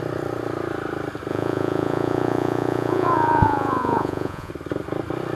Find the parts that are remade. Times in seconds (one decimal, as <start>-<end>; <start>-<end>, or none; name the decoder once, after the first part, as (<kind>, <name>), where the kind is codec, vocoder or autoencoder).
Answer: 1.3-4.5 (vocoder, Vocos)